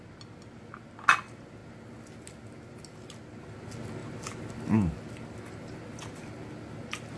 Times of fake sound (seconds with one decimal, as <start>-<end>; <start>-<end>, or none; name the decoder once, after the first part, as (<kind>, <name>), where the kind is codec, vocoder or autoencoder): none